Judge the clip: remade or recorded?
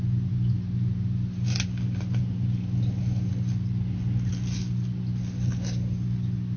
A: recorded